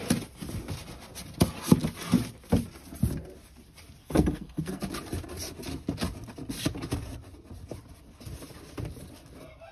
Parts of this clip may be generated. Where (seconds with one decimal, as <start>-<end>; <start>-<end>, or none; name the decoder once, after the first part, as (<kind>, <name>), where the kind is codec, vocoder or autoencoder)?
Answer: 4.0-4.8 (codec, SNAC)